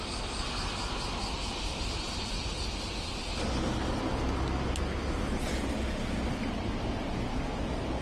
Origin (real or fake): real